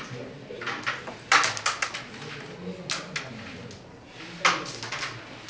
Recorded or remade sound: recorded